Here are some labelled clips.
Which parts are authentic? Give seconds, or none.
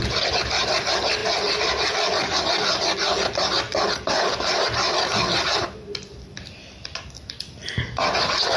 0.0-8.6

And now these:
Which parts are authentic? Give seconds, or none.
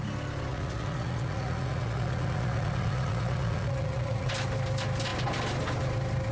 0.0-0.5; 4.3-6.3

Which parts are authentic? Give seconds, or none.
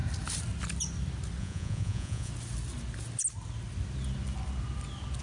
0.0-1.4; 2.3-5.2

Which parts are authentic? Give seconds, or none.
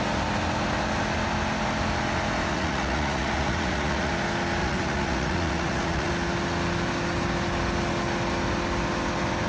0.0-2.5; 4.1-4.6; 6.1-9.5